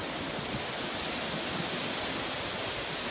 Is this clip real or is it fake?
real